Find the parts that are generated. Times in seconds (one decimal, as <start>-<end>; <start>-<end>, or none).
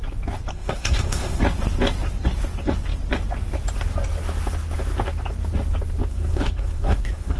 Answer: 0.5-1.4; 6.1-7.4